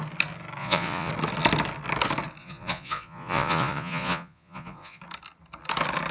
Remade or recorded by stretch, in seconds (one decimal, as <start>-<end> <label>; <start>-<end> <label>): 0.0-0.6 recorded; 0.6-1.1 remade; 1.1-2.4 recorded; 2.4-5.0 remade; 5.0-6.1 recorded

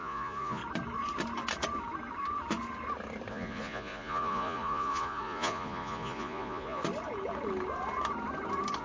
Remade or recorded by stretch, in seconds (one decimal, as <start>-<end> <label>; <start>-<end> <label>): 0.0-0.6 remade; 0.6-3.3 recorded; 3.3-6.8 remade; 6.8-8.8 recorded

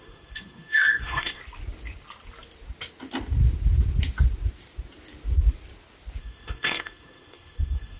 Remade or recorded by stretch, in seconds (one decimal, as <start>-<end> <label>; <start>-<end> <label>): 0.0-1.4 remade; 1.4-6.2 recorded; 6.2-8.0 remade